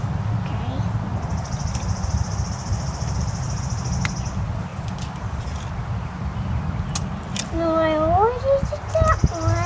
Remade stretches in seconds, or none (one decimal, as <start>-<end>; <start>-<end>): 1.1-3.6; 4.7-5.6